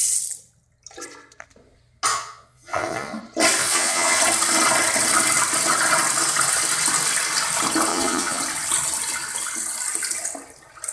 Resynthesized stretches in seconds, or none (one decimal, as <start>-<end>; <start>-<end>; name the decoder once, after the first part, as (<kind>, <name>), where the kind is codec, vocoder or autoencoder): 2.1-3.2 (vocoder, Vocos); 3.6-4.2; 7.9-8.4